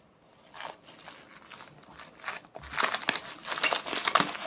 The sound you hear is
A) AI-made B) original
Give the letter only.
B